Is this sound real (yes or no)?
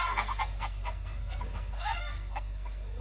no